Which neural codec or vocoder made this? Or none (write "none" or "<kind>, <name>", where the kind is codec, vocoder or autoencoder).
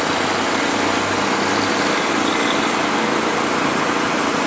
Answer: none